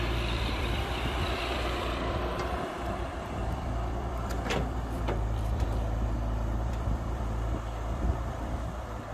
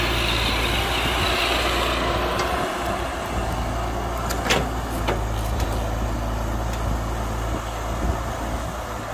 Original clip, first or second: second